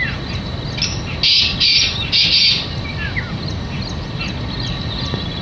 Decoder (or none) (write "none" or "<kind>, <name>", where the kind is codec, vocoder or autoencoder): none